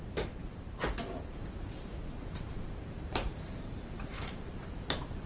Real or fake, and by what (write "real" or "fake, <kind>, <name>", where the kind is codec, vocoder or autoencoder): fake, vocoder, BigVGAN v2